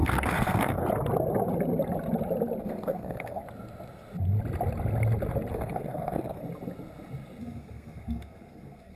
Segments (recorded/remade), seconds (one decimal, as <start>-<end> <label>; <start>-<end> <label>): 0.0-0.8 remade; 0.8-2.6 recorded; 2.6-3.4 remade; 3.4-5.5 recorded; 5.5-6.4 remade; 6.4-7.4 recorded; 7.4-9.0 remade